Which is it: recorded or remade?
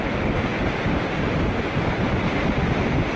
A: recorded